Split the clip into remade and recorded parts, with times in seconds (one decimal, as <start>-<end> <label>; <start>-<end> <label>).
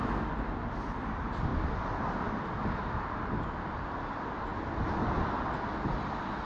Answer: 0.0-6.5 recorded